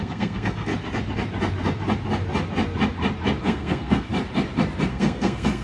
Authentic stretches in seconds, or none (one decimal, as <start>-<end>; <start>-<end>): 0.7-3.4; 4.1-4.9